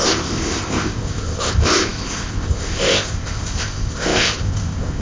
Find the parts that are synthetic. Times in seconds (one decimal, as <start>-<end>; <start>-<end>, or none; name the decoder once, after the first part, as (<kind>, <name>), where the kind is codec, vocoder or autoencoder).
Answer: 0.0-5.0 (codec, ZipCodec)